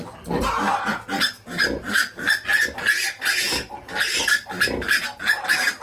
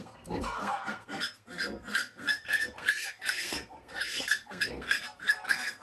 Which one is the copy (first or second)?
second